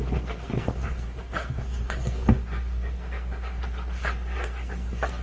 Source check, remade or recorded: remade